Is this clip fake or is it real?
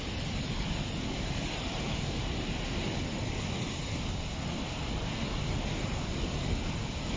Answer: real